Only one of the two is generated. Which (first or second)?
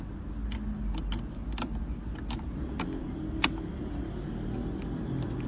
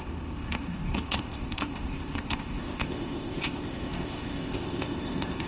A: second